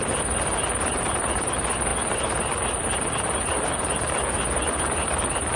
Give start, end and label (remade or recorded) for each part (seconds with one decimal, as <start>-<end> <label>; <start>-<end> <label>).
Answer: 0.0-5.6 recorded